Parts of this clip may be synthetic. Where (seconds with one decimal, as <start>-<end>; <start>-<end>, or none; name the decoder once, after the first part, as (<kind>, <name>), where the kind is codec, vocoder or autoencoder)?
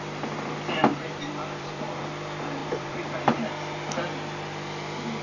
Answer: 0.9-2.0 (vocoder, BigVGAN v2); 2.6-3.5